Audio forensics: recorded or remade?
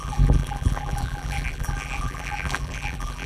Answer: remade